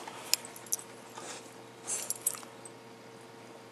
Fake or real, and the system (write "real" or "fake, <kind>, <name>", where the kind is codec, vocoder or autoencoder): real